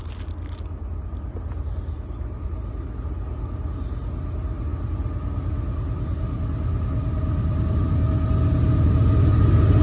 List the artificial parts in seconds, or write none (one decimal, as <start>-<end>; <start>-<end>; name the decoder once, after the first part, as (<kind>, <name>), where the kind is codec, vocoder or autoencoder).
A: none